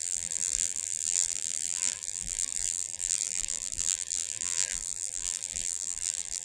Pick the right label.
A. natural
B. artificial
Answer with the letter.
B